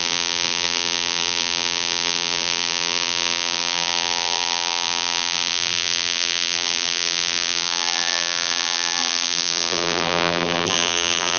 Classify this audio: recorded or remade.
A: remade